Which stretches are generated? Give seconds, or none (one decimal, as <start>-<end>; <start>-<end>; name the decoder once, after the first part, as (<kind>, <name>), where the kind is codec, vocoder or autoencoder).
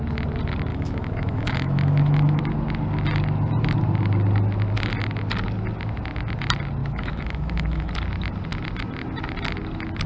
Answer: 0.7-2.4 (autoencoder, DAC-VAE); 6.8-7.9